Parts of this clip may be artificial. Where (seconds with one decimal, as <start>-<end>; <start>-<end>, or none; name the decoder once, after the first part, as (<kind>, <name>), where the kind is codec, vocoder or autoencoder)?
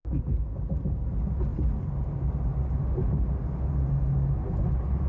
none